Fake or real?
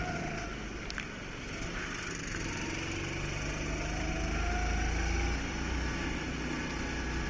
real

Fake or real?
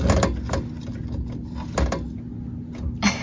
real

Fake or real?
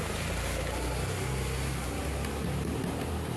real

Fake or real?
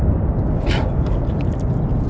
real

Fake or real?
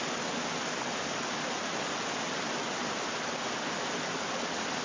real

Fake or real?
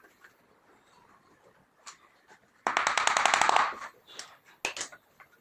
real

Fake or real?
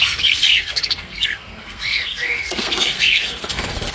fake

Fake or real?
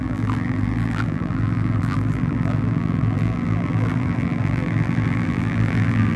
fake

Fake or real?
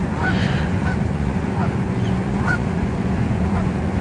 fake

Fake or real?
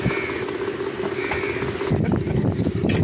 real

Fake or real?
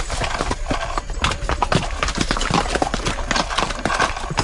real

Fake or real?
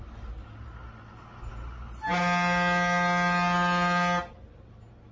real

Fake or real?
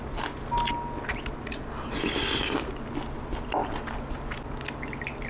real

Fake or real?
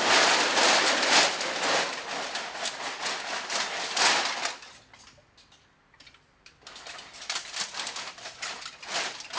real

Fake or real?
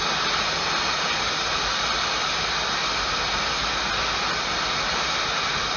real